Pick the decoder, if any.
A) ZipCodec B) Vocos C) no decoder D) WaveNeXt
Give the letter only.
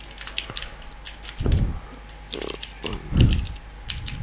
C